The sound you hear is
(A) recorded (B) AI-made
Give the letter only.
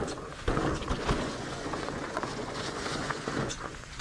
B